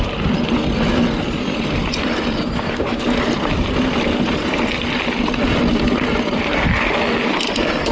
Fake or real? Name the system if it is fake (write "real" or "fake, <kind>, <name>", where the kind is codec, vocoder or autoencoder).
real